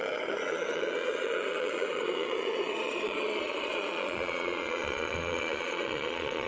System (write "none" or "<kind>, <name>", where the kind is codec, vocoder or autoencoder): vocoder, Vocos